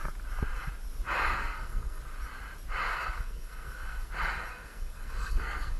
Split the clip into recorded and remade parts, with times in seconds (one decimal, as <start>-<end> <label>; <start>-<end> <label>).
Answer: 0.0-1.3 recorded; 1.3-2.0 remade; 2.0-2.9 recorded; 2.9-4.1 remade; 4.1-4.5 recorded; 4.5-5.8 remade